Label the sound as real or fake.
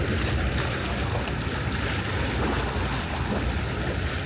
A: real